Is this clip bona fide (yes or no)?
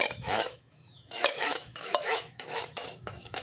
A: no